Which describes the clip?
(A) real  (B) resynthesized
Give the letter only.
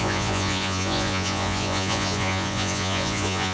B